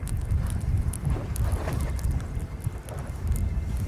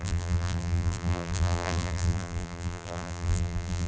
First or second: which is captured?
first